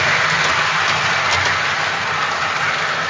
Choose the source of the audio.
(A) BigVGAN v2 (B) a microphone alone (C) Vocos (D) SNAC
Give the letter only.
B